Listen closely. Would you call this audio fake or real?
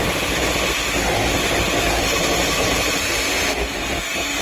real